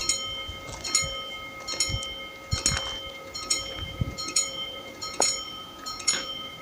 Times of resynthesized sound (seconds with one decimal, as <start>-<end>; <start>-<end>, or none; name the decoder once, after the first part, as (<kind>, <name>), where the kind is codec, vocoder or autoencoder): 3.1-6.6 (vocoder, Vocos)